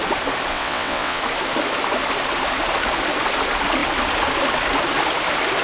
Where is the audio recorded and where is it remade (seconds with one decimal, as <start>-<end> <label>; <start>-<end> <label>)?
0.0-0.5 recorded; 0.5-1.2 remade; 1.2-5.6 recorded